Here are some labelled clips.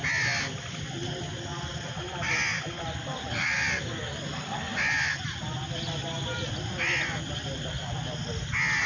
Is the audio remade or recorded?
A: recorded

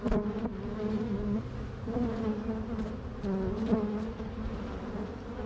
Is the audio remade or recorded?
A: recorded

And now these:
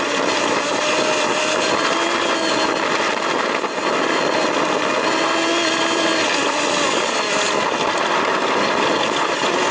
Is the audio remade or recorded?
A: recorded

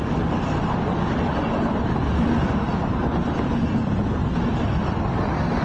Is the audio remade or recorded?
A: recorded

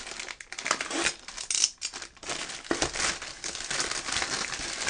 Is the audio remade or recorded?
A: recorded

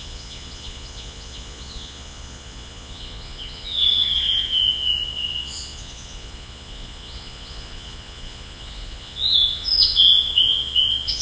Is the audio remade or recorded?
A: remade